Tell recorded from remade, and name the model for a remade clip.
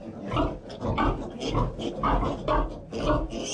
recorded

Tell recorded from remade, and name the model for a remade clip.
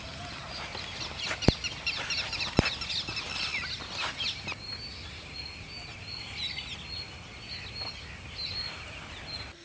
recorded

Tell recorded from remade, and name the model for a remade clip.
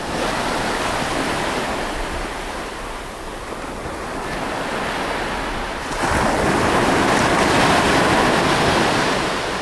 recorded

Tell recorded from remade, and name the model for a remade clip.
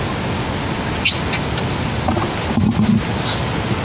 recorded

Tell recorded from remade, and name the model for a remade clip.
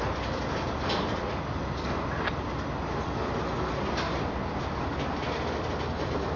recorded